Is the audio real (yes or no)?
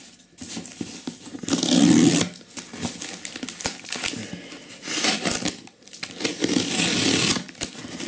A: yes